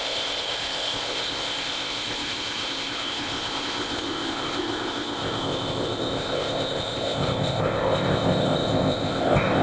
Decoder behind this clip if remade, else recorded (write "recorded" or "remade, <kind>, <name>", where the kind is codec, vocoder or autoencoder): remade, codec, ZipCodec